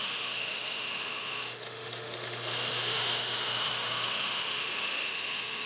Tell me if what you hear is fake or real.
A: fake